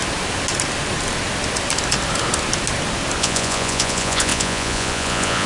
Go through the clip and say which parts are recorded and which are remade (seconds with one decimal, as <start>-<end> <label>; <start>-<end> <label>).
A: 0.0-3.2 recorded; 3.2-5.5 remade